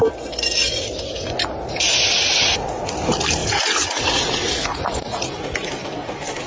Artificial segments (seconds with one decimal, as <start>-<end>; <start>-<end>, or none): 2.4-2.9; 3.4-5.7